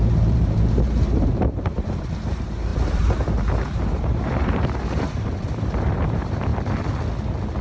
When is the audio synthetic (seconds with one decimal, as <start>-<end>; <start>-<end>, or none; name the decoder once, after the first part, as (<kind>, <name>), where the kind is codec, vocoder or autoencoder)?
0.0-6.5 (vocoder, BigVGAN v2)